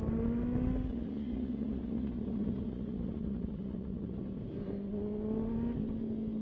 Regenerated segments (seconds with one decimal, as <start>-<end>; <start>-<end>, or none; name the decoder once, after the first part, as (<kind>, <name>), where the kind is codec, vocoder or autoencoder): 0.9-4.2 (vocoder, Vocos)